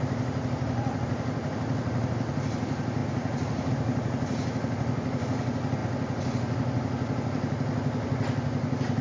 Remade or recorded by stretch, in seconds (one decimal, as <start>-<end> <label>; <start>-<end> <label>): 0.0-9.0 recorded